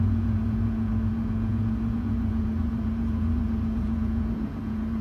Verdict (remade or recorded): remade